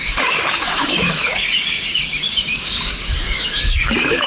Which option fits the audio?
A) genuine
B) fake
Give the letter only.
B